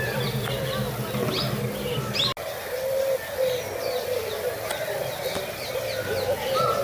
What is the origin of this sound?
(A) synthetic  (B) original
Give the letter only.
B